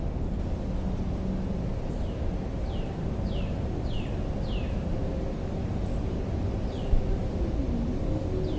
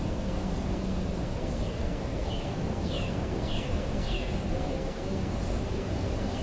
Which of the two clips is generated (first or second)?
second